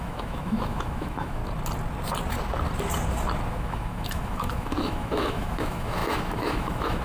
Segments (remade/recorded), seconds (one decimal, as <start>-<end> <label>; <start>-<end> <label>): 0.0-1.4 remade; 1.4-3.5 recorded; 3.5-7.0 remade